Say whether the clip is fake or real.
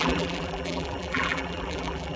fake